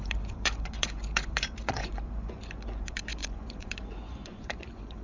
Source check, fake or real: fake